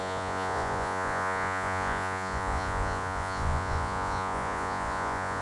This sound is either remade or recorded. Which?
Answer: remade